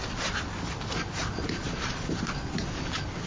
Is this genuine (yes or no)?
yes